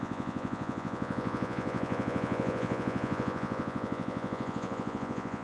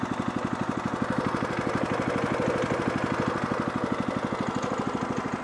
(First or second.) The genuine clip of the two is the second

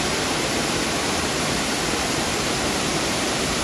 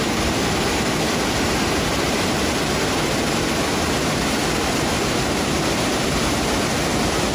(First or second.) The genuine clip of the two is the second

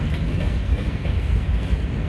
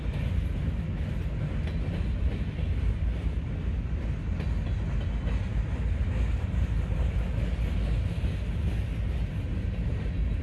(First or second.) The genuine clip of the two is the second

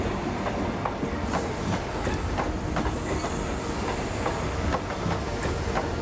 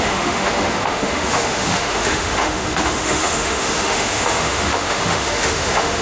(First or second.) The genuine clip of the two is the first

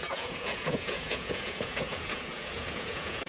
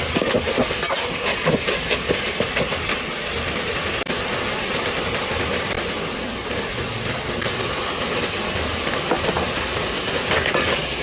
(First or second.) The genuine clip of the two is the second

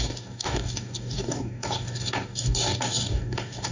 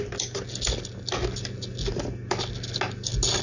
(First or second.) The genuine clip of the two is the second